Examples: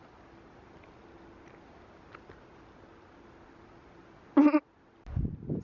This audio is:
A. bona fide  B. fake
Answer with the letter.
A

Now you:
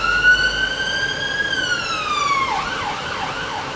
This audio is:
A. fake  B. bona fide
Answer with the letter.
B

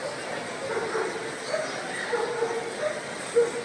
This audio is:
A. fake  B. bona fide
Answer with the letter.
B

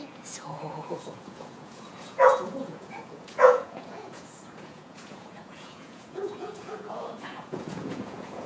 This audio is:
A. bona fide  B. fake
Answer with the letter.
B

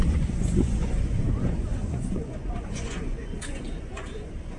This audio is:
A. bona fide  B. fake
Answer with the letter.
B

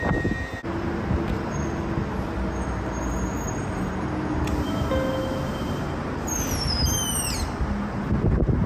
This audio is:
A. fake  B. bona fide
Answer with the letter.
B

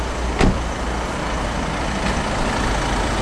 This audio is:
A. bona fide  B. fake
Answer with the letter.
A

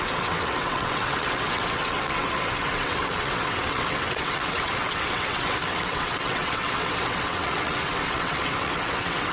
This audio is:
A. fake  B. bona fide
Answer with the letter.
A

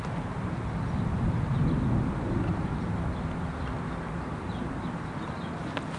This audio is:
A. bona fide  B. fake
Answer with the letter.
A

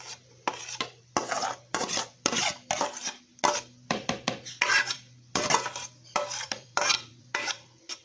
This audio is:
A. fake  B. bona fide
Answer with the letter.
A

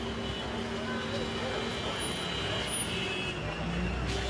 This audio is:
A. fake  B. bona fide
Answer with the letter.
B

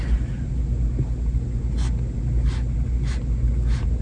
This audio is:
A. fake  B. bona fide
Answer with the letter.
B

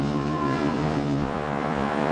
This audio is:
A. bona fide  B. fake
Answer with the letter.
B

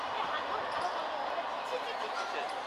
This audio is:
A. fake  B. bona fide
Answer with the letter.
B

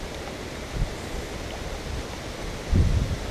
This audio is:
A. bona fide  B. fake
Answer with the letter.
A